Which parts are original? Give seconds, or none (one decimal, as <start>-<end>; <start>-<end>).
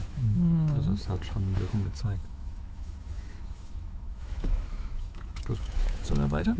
none